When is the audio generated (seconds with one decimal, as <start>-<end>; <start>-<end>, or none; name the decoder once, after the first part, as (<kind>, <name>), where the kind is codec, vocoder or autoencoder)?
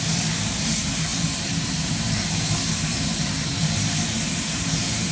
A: 0.0-5.1 (vocoder, BigVGAN v2)